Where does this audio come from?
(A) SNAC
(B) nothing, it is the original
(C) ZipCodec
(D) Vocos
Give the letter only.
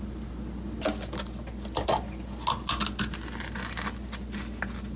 B